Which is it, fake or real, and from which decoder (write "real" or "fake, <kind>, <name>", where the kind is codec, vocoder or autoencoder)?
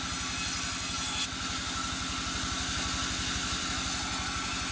real